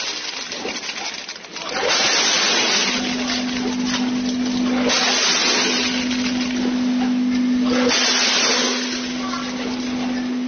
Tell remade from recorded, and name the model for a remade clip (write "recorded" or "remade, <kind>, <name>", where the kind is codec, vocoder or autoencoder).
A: recorded